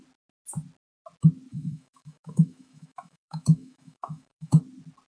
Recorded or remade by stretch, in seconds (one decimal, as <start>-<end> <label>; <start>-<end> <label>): 0.0-1.5 recorded; 1.5-4.6 remade; 4.6-5.1 recorded